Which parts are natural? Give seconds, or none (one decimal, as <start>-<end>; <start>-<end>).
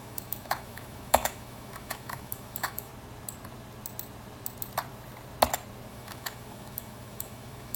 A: 2.9-5.9